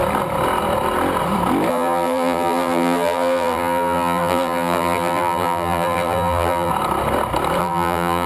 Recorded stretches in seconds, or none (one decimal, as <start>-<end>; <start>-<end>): 0.0-1.7; 6.7-7.6